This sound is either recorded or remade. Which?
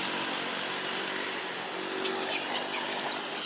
recorded